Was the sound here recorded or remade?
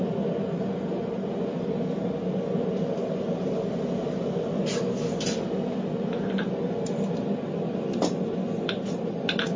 recorded